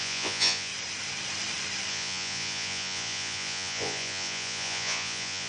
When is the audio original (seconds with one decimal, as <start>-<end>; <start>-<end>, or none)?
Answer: 0.7-1.9